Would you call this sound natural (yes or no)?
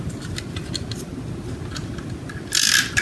yes